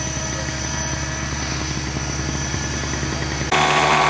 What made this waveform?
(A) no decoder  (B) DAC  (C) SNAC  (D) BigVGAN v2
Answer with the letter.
A